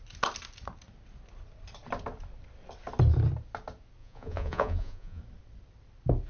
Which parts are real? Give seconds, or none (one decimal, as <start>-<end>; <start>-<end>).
0.0-4.0; 5.2-6.3